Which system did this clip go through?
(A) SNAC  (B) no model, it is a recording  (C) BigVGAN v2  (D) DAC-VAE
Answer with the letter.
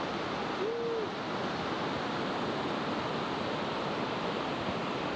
B